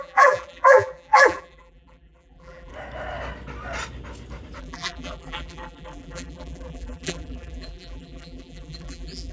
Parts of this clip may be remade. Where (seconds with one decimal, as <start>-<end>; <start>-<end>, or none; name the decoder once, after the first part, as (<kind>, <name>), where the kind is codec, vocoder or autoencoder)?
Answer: 0.0-2.7 (vocoder, BigVGAN v2); 4.6-9.3